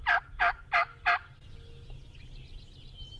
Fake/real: real